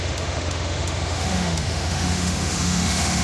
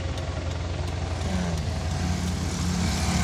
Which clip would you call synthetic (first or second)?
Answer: first